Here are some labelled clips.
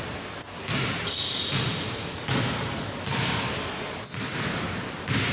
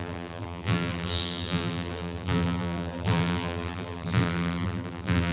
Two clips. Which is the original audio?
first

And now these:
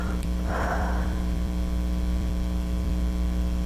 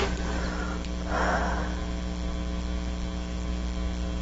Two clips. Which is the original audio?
second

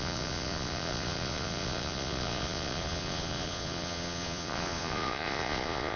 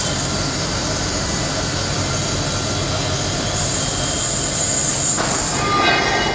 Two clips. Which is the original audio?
second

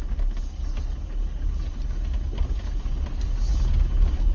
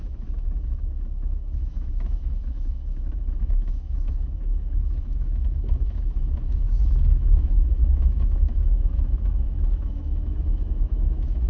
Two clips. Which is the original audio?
first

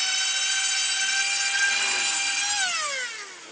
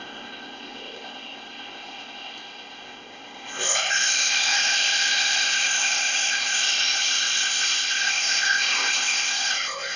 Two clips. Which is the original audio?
first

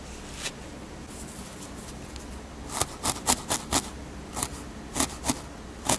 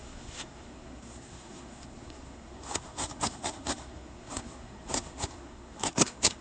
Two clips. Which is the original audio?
first